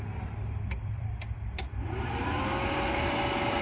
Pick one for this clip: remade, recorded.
remade